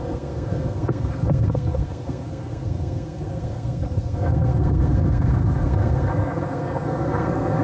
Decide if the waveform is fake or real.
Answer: fake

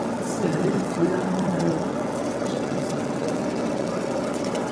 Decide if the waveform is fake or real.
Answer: fake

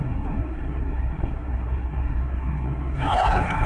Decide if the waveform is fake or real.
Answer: fake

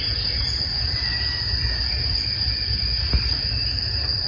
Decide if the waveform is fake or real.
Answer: real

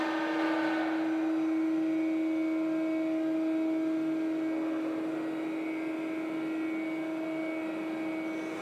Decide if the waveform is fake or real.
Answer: real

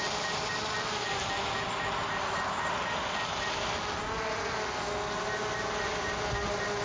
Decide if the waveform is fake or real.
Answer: real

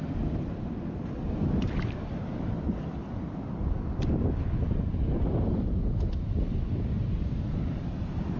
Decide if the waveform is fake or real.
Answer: real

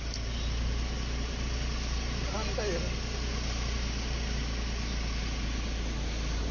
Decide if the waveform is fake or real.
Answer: real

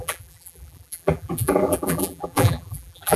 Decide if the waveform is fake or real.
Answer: fake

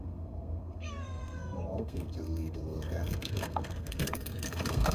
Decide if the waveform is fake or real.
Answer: fake